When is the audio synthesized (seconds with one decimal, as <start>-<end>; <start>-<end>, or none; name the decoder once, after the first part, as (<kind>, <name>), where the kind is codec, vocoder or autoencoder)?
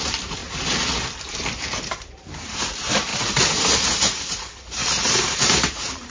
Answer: 0.0-0.4 (vocoder, BigVGAN v2); 1.3-6.1